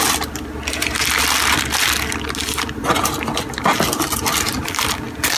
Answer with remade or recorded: recorded